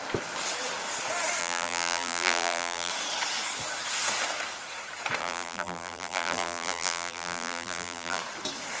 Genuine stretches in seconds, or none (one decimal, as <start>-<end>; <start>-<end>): 0.0-1.4; 2.9-5.2; 8.2-8.8